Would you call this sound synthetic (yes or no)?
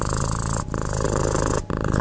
no